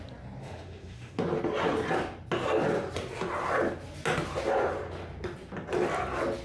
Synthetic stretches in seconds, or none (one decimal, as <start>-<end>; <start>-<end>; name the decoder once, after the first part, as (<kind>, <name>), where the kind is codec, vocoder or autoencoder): 0.4-1.2 (autoencoder, DAC-VAE)